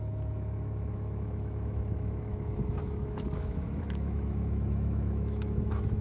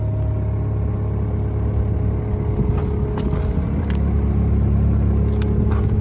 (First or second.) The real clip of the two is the second